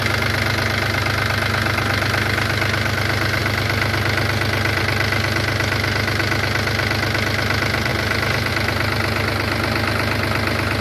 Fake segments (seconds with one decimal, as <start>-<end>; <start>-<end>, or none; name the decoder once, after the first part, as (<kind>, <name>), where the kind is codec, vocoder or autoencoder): none